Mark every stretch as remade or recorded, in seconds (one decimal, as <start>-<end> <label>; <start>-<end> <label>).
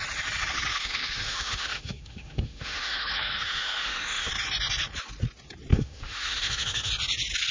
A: 0.0-0.7 recorded; 0.7-4.3 remade; 4.3-5.7 recorded; 5.7-6.9 remade; 6.9-7.5 recorded